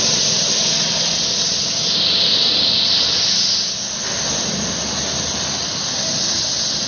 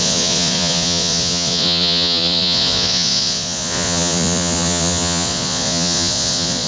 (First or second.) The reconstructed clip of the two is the second